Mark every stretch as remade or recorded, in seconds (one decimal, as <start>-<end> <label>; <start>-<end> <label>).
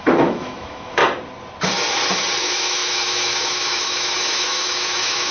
0.0-1.0 remade; 1.0-2.4 recorded; 2.4-5.3 remade